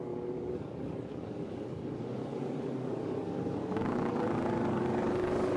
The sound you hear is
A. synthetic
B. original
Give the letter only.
A